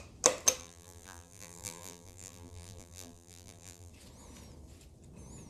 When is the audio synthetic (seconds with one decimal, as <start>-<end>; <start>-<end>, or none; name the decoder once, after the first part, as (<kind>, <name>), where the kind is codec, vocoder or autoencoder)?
0.6-3.9 (vocoder, BigVGAN v2)